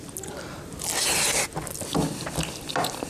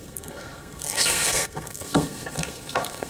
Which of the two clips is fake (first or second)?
second